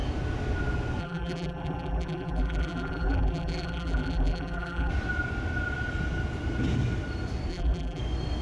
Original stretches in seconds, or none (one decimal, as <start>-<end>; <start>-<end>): 0.0-1.0; 4.9-7.5; 8.0-8.4